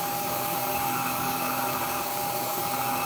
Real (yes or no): no